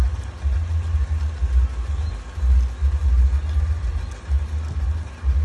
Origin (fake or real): real